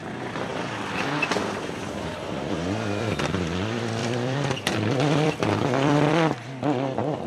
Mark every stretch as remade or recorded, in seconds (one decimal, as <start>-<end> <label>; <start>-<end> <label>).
0.0-0.5 recorded; 0.5-3.2 remade; 3.2-4.0 recorded; 4.0-6.1 remade; 6.1-7.3 recorded